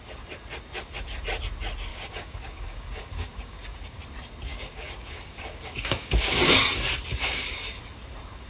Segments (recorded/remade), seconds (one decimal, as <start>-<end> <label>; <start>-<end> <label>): 0.0-1.9 recorded; 1.9-4.0 remade; 4.0-4.5 recorded; 4.5-6.6 remade; 6.6-7.1 recorded; 7.1-7.8 remade; 7.8-8.5 recorded